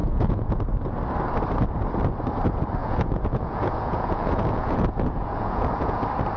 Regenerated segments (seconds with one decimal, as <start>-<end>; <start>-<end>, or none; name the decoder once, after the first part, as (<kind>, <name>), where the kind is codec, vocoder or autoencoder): 0.0-0.6 (vocoder, Vocos); 2.8-6.0